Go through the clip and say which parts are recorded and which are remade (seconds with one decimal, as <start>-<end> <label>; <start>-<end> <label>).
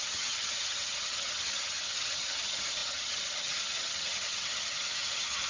0.0-5.5 remade